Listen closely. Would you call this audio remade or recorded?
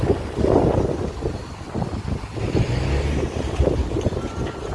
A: recorded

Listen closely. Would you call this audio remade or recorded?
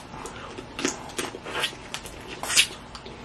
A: recorded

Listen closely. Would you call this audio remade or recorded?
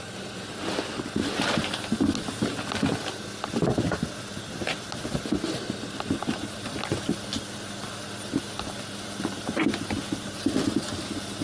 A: recorded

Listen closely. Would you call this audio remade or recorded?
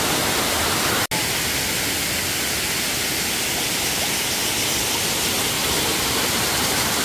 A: recorded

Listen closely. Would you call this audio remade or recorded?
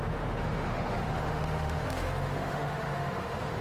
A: remade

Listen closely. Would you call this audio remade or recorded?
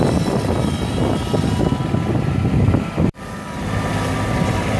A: recorded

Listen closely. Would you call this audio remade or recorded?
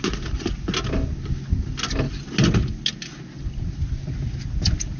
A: recorded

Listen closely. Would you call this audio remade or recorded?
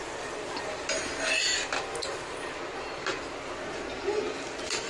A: recorded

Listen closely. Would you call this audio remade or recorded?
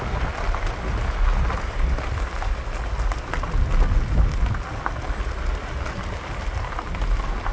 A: recorded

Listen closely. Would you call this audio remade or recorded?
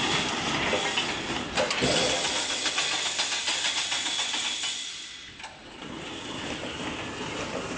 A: recorded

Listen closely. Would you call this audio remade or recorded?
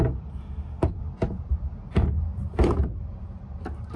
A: remade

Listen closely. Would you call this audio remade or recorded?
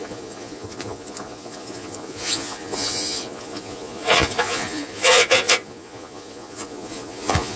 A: remade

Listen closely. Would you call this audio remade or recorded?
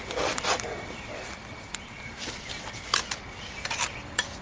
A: recorded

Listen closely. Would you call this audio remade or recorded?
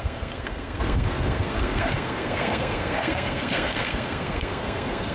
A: remade